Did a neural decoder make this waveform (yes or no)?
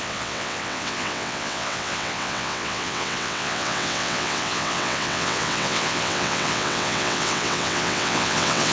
yes